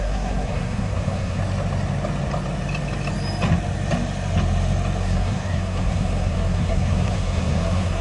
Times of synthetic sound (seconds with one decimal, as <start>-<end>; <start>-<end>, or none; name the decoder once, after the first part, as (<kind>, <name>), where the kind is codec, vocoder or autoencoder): 0.0-1.4 (codec, SNAC); 5.0-8.0